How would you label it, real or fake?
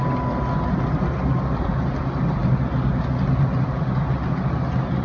real